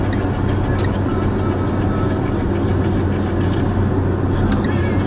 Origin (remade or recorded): recorded